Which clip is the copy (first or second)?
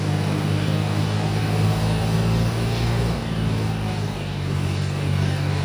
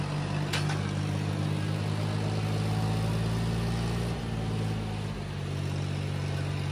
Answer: first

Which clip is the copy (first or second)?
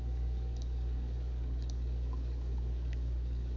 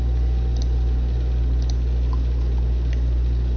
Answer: first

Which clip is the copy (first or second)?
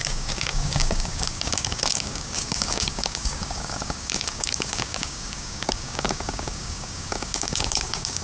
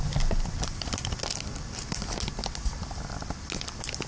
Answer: first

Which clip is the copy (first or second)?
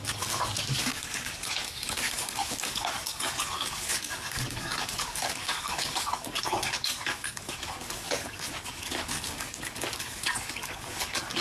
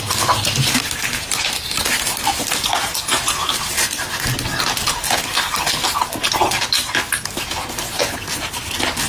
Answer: first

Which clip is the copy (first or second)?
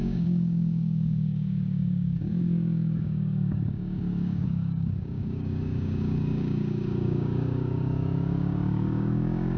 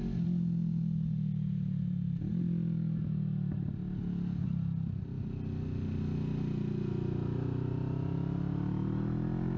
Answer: first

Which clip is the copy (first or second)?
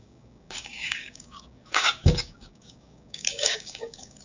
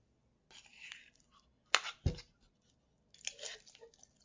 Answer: first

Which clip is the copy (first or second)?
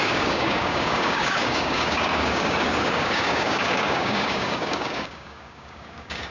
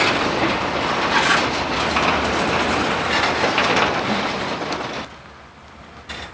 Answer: first